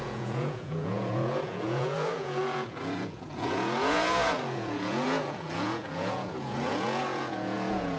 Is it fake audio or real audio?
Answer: fake